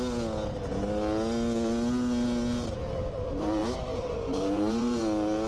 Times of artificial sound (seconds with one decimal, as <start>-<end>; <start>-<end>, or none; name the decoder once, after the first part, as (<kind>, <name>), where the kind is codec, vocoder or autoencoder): 3.6-5.0 (vocoder, BigVGAN v2)